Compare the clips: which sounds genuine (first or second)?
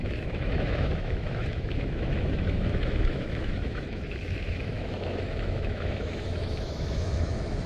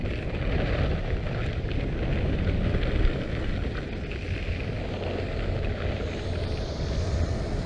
second